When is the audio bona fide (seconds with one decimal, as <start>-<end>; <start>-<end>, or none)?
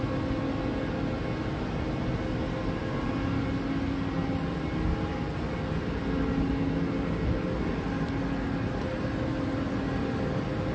0.0-10.7